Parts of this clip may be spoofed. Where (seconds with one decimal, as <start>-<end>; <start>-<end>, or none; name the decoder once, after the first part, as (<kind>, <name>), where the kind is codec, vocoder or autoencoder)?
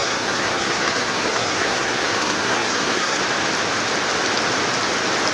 0.0-3.2 (codec, SNAC)